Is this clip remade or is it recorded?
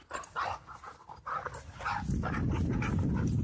recorded